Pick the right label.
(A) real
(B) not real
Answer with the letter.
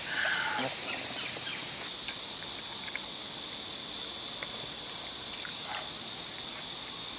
A